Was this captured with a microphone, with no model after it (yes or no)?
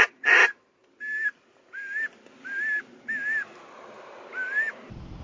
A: yes